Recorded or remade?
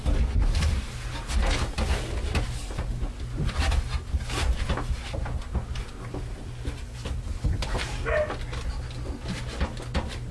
recorded